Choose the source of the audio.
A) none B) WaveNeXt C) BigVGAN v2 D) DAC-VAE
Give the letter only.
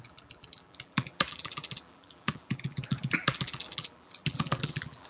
C